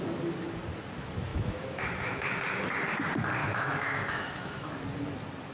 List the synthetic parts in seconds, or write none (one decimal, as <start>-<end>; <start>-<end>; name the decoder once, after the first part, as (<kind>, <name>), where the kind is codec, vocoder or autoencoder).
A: 1.3-2.3 (autoencoder, DAC-VAE); 3.4-4.7